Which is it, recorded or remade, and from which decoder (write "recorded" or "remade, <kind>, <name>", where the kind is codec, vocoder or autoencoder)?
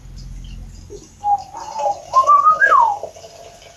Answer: recorded